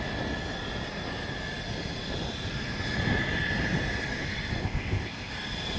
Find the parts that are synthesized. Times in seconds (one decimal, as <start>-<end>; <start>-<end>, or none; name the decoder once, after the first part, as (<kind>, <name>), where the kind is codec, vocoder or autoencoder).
4.6-5.3 (codec, ZipCodec)